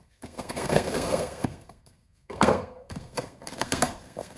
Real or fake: fake